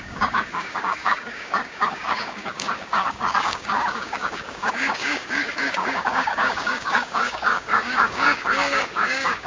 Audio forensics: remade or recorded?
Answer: remade